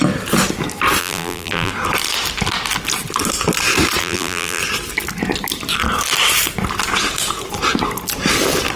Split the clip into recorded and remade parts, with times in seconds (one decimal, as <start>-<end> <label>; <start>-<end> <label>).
0.0-1.0 recorded; 1.0-1.7 remade; 1.7-4.0 recorded; 4.0-4.6 remade; 4.6-8.8 recorded